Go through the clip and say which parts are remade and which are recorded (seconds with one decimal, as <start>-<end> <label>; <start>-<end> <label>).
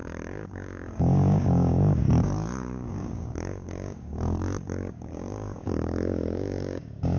0.0-7.2 remade